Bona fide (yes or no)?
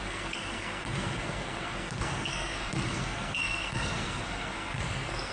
no